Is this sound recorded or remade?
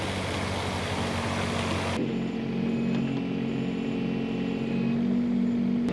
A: recorded